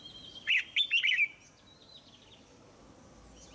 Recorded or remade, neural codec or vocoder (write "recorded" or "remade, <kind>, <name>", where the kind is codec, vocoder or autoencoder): recorded